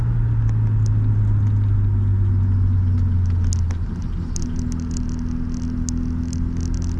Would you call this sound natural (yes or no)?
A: yes